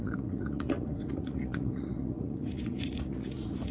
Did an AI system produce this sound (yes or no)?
yes